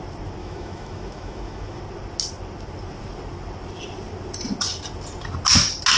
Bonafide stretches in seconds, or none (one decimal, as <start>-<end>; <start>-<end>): 0.0-0.4; 1.8-6.0